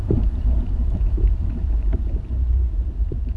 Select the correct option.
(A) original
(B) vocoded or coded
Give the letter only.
B